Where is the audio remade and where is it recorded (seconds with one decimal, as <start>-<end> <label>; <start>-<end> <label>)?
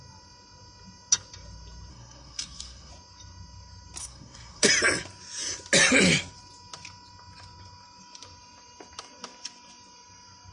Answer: 0.0-1.9 recorded; 1.9-2.9 remade; 2.9-4.0 recorded; 4.0-4.7 remade; 4.7-10.5 recorded